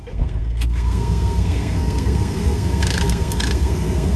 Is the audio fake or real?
fake